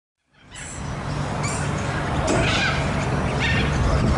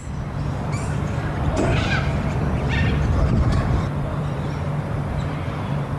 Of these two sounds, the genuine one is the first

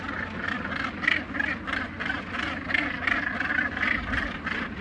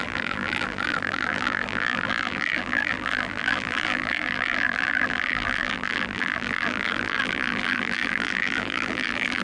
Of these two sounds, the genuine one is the first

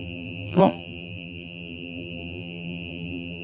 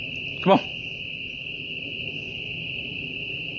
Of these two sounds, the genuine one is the second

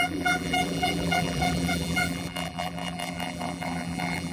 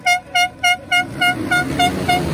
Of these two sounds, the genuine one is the second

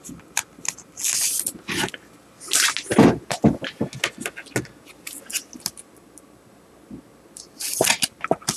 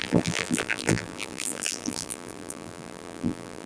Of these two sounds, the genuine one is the first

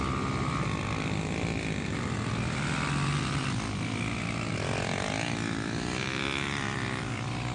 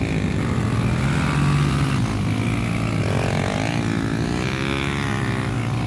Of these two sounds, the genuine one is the second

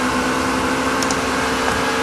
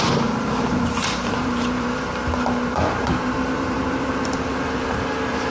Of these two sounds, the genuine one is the first